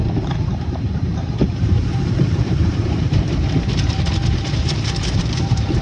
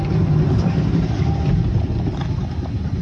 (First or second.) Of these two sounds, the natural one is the second